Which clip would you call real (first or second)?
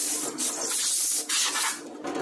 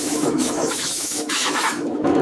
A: first